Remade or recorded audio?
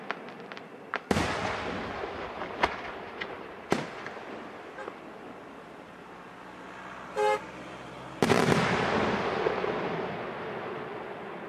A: recorded